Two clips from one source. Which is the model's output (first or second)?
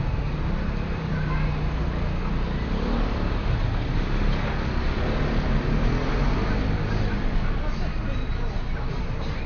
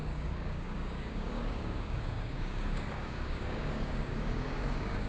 second